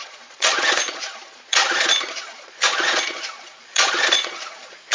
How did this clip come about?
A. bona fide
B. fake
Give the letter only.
B